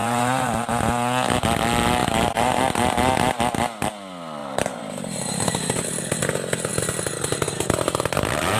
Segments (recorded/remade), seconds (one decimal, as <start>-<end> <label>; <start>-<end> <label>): 0.0-0.7 remade; 0.7-2.0 recorded; 2.0-2.6 remade; 2.6-4.4 recorded; 4.4-5.5 remade; 5.5-8.6 recorded